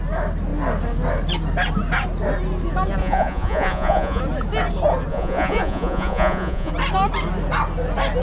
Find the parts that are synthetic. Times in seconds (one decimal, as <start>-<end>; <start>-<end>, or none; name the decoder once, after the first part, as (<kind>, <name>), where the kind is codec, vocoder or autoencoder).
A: 3.0-4.2 (vocoder, Vocos); 5.1-6.7

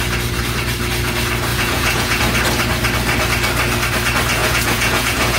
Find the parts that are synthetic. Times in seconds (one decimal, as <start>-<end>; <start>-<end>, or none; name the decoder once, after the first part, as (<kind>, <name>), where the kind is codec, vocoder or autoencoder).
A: 1.5-2.2 (vocoder, Vocos); 4.4-5.4

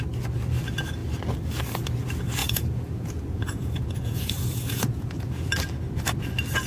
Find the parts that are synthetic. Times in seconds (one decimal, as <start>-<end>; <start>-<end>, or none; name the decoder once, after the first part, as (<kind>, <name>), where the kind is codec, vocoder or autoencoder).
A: 2.4-5.5 (vocoder, Vocos)